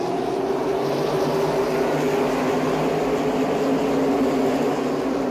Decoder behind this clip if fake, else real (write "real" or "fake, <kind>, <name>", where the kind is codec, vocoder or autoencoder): real